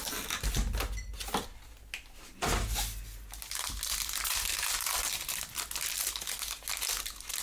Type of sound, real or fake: real